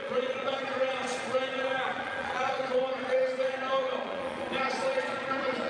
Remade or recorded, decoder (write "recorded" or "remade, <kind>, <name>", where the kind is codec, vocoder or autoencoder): remade, vocoder, Vocos